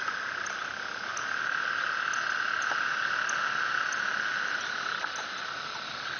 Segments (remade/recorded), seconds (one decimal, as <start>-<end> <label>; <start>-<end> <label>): 0.0-6.2 recorded